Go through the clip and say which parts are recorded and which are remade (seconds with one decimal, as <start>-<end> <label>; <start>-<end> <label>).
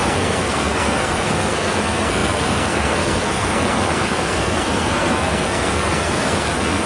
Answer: 0.0-6.9 remade